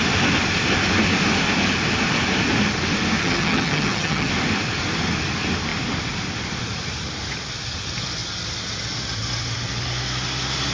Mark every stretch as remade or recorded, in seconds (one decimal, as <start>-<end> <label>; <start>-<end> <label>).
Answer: 0.0-3.2 recorded; 3.2-4.3 remade; 4.3-10.7 recorded